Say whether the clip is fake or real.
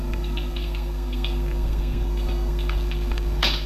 fake